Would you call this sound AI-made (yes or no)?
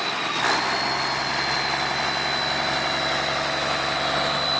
no